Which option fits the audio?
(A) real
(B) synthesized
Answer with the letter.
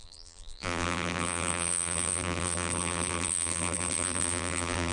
B